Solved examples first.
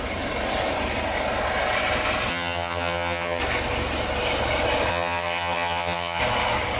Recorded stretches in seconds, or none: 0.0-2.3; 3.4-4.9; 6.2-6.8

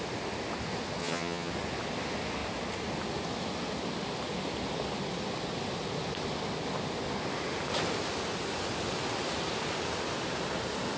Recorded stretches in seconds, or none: 0.0-1.0; 1.5-11.0

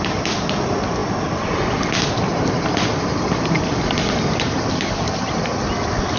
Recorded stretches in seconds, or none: 0.0-6.2

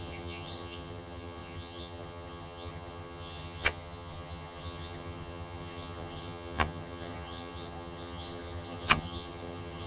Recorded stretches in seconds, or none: none

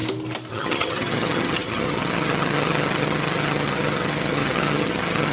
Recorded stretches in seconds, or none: 0.0-0.5

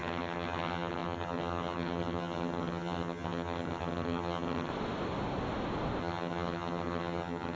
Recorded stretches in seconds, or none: 4.7-6.0

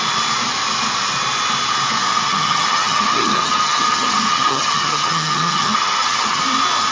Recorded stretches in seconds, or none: 0.0-2.3; 6.4-6.9